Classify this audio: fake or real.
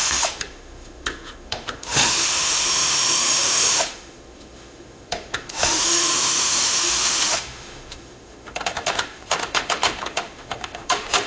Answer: fake